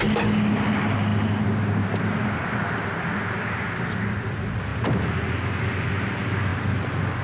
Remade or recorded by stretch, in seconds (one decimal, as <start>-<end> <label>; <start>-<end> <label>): 0.0-7.2 recorded